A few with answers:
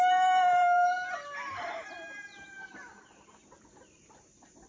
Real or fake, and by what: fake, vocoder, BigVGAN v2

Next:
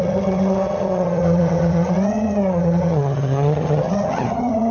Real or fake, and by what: fake, vocoder, HiFi-GAN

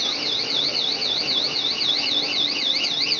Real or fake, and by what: real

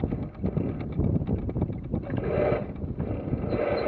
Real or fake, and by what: real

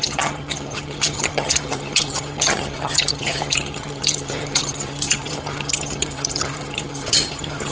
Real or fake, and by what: fake, vocoder, HiFi-GAN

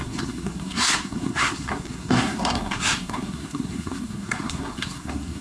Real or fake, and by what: fake, codec, SNAC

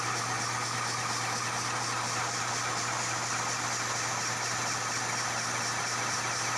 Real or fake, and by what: real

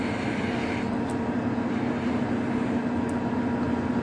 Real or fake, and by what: real